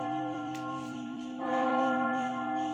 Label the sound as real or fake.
fake